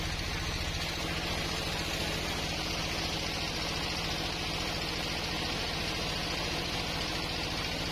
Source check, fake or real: real